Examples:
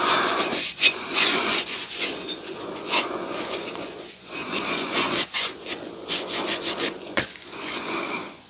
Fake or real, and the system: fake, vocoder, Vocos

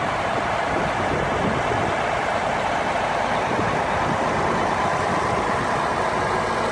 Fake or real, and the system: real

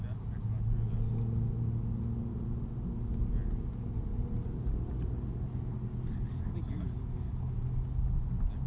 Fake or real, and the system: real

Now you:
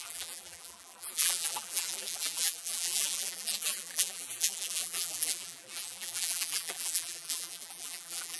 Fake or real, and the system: fake, vocoder, BigVGAN v2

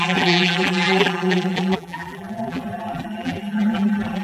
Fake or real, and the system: fake, vocoder, BigVGAN v2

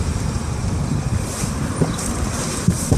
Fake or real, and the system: fake, vocoder, BigVGAN v2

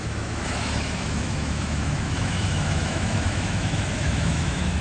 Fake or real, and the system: fake, autoencoder, DAC-VAE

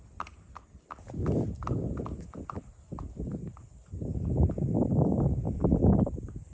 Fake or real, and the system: real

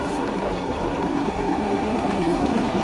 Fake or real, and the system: fake, codec, SNAC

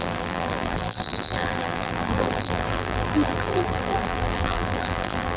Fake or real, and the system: fake, vocoder, BigVGAN v2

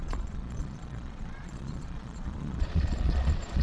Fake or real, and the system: fake, vocoder, Vocos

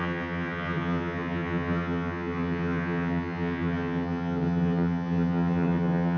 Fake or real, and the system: fake, vocoder, HiFi-GAN